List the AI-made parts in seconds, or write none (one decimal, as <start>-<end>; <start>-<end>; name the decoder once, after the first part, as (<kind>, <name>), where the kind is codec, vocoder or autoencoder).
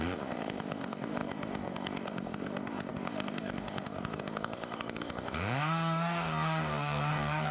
0.0-7.5 (codec, DAC)